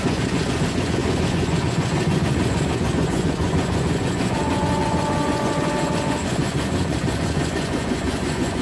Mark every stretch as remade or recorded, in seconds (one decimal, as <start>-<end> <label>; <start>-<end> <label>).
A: 0.0-8.6 remade